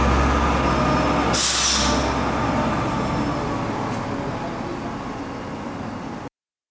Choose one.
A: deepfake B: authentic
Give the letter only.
B